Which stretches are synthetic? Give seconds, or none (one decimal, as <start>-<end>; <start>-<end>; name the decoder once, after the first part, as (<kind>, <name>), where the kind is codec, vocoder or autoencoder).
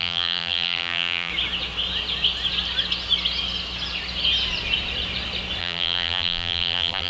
0.0-1.3 (vocoder, BigVGAN v2); 5.6-7.1